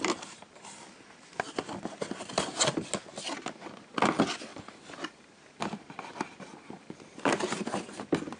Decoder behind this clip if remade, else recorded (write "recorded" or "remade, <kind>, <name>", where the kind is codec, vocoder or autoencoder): recorded